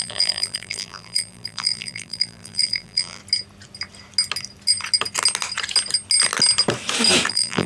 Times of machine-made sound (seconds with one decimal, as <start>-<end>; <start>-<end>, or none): 0.0-3.2; 7.3-7.7